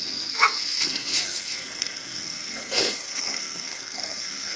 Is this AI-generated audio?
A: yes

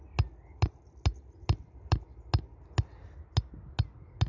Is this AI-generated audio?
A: no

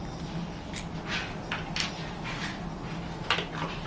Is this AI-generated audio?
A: no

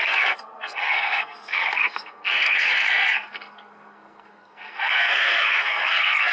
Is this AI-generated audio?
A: yes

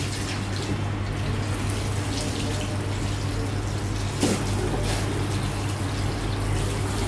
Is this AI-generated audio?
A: no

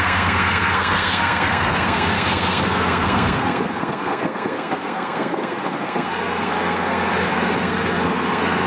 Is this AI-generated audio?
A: yes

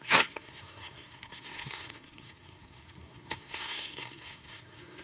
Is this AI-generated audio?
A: yes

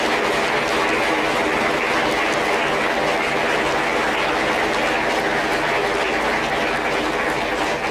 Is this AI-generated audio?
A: no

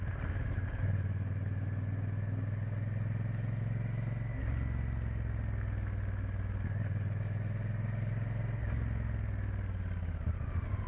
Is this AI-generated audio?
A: no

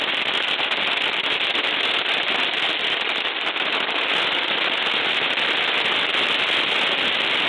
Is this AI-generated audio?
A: no